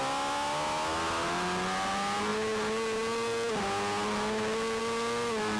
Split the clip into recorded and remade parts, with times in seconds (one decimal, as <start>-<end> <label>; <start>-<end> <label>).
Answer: 0.0-5.6 recorded